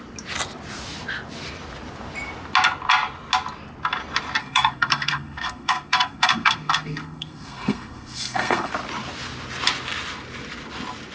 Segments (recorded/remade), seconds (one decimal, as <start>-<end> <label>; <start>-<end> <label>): 0.0-4.4 recorded; 4.4-8.7 remade; 8.7-11.1 recorded

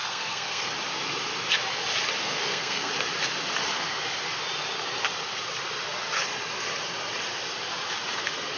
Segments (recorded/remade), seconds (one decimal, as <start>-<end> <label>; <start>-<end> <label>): 0.0-0.7 remade; 0.7-2.2 recorded; 2.2-2.9 remade; 2.9-8.6 recorded

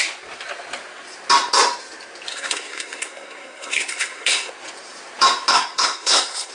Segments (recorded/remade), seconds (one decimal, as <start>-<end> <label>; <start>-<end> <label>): 0.0-2.3 recorded; 2.3-4.5 remade; 4.5-5.5 recorded; 5.5-6.5 remade